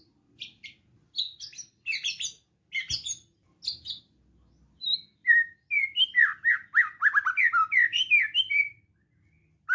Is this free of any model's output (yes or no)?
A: yes